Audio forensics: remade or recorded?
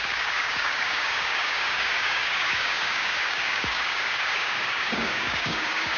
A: remade